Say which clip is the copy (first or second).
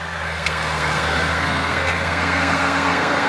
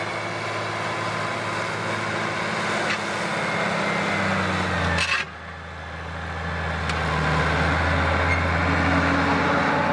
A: first